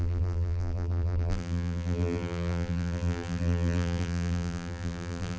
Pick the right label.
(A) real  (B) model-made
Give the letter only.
B